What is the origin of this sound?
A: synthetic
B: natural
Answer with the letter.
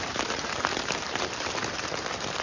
A